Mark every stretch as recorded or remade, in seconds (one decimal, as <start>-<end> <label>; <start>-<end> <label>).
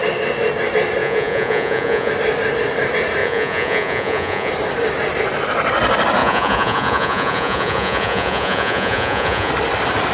0.0-1.0 recorded; 1.0-2.1 remade; 2.1-3.2 recorded; 3.2-4.5 remade; 4.5-6.2 recorded; 6.2-9.5 remade; 9.5-10.1 recorded